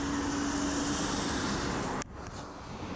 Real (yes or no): yes